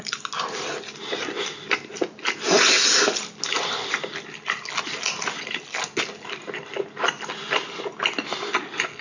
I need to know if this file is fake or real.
real